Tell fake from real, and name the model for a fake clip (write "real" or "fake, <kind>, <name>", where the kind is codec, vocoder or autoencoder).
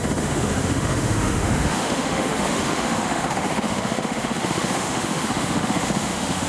fake, autoencoder, DAC-VAE